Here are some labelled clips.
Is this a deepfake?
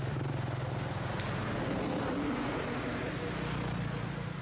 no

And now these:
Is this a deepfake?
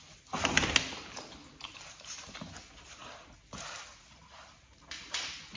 no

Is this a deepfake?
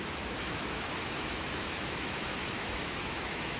yes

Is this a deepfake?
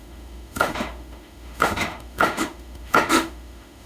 yes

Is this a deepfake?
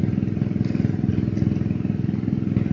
no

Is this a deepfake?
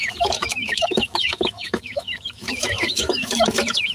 yes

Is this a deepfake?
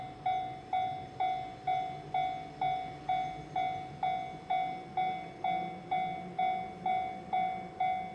no